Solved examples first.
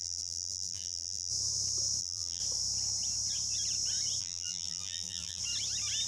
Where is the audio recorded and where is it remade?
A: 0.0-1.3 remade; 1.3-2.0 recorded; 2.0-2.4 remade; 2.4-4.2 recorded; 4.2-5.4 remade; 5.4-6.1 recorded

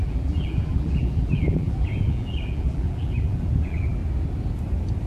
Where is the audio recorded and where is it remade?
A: 0.0-4.0 remade; 4.0-5.1 recorded